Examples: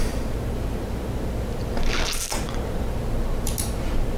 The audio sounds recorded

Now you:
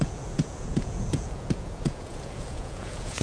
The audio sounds remade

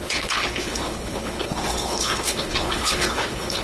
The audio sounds remade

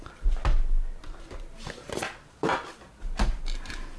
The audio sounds recorded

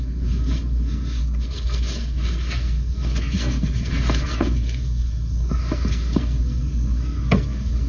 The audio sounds remade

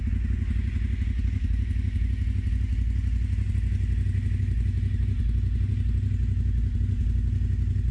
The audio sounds recorded